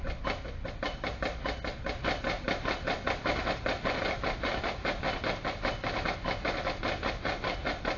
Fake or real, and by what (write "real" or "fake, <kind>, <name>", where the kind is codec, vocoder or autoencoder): real